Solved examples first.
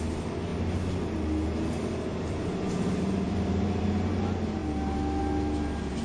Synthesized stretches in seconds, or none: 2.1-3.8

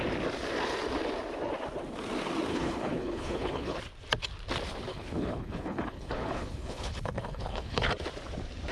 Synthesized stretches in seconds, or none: 2.5-3.8; 4.9-7.9

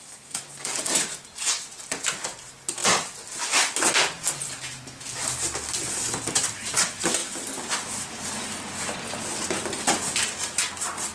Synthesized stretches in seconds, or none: none